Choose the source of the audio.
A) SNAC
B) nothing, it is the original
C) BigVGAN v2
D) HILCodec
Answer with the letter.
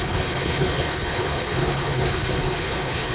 D